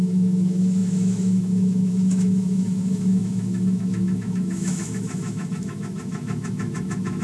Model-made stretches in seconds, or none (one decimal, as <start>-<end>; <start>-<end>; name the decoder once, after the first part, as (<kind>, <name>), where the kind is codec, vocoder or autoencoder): 0.0-7.2 (autoencoder, DAC-VAE)